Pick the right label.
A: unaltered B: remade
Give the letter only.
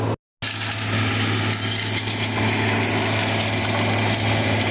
A